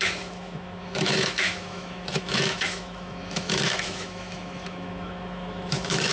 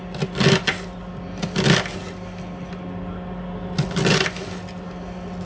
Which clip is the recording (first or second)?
second